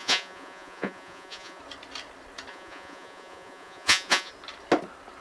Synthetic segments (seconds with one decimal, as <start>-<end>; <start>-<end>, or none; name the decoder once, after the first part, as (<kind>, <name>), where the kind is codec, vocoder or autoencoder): 0.0-1.6 (vocoder, Vocos); 2.5-4.3